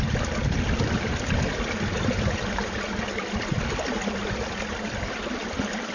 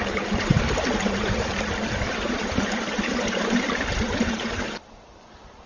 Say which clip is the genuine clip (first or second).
first